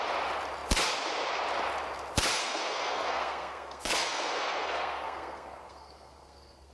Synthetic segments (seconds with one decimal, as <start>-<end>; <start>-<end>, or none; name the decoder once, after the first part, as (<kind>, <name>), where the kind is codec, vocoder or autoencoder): 2.4-6.7 (codec, SNAC)